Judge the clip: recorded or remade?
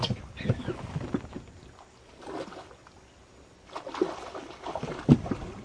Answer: recorded